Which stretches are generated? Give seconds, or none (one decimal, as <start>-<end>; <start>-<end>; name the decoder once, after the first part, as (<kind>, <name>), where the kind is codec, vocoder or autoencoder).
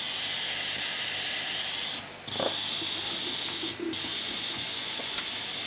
4.1-5.1 (vocoder, Vocos)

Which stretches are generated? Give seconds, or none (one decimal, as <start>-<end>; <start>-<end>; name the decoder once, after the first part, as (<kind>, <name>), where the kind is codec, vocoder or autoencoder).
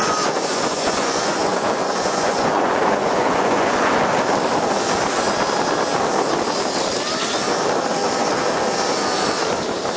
0.0-3.9 (vocoder, Vocos)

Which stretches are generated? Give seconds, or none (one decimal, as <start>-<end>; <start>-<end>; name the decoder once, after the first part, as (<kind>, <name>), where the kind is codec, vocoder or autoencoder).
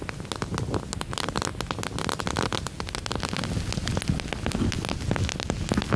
none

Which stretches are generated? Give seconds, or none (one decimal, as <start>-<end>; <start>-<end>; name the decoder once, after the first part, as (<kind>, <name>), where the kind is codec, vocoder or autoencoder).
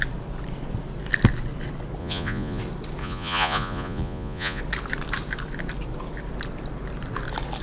2.0-2.6 (vocoder, Vocos); 3.0-4.6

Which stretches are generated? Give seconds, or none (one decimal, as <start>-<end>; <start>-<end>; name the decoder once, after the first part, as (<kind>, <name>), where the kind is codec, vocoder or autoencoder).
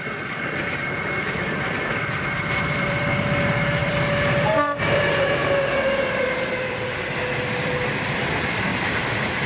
0.0-5.4 (vocoder, BigVGAN v2); 5.9-9.5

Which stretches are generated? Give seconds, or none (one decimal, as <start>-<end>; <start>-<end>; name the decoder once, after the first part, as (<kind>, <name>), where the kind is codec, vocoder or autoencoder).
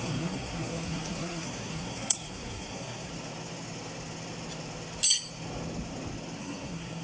0.0-3.1 (codec, SNAC); 6.4-7.0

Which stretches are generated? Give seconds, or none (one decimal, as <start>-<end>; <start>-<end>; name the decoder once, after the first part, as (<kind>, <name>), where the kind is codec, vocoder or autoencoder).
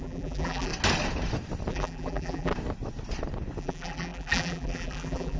0.0-0.7 (vocoder, BigVGAN v2); 1.7-2.5; 3.6-5.4